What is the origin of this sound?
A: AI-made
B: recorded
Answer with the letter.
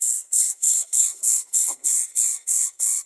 A